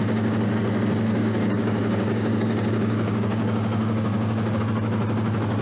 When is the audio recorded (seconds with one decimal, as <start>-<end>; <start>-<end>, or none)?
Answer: 0.0-1.2; 4.6-5.6